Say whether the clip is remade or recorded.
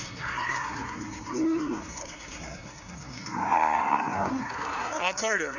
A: remade